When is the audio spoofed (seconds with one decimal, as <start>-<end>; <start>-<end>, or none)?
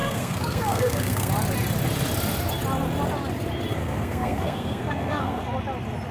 0.0-1.3; 3.8-5.4